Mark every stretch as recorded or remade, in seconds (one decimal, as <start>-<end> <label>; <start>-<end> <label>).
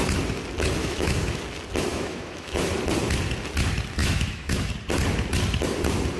0.0-0.8 recorded; 0.8-1.4 remade; 1.4-1.9 recorded; 1.9-2.7 remade; 2.7-4.0 recorded; 4.0-4.7 remade; 4.7-6.2 recorded